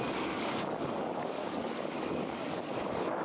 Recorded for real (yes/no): no